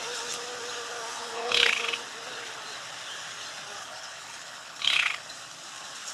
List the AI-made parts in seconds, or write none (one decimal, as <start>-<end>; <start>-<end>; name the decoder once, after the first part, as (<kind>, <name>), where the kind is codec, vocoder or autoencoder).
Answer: 1.1-1.8 (codec, HILCodec); 3.8-5.2